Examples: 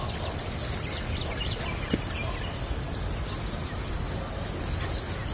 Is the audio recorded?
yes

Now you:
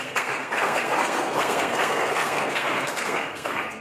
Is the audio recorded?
no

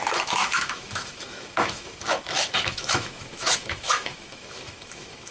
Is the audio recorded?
no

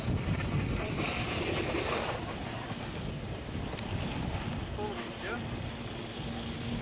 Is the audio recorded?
yes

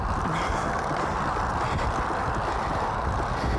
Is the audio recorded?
yes